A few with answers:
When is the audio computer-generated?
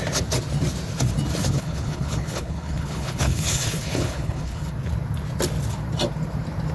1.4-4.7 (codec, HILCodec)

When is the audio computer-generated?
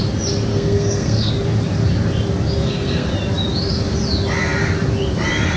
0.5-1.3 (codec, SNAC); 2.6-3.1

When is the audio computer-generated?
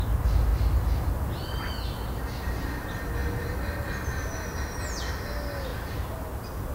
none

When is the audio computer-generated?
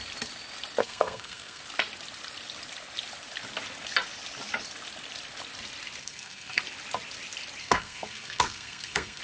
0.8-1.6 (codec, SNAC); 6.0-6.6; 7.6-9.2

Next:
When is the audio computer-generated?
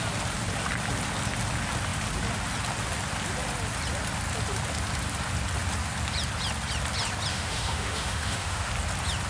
7.3-8.7 (autoencoder, DAC-VAE)